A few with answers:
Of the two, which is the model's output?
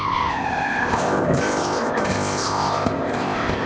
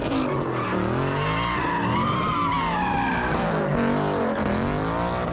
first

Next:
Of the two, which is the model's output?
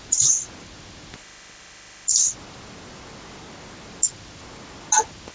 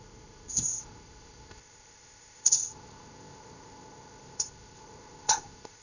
second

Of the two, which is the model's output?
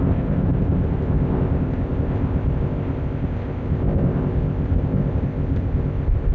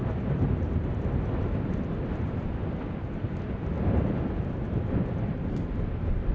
first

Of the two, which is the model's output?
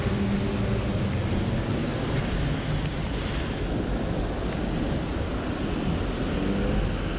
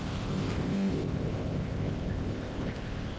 second